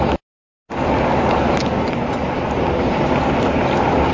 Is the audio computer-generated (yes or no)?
no